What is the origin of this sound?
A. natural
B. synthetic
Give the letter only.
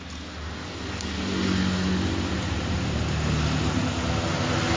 A